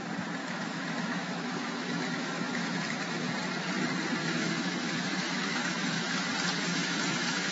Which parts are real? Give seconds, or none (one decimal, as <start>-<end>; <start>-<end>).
0.0-0.4; 3.3-4.2; 6.3-6.7